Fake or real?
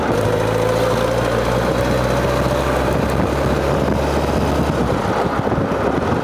real